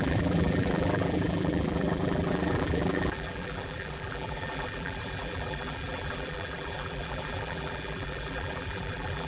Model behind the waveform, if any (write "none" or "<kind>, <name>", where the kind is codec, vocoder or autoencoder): vocoder, BigVGAN v2